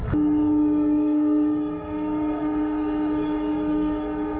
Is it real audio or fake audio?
fake